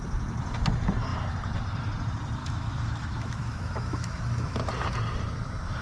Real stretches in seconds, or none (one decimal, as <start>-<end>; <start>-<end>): 0.0-2.4; 4.7-5.8